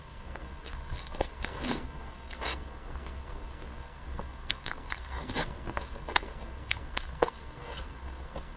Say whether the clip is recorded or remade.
remade